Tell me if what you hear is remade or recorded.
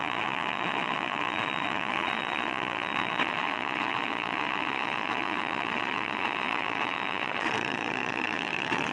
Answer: remade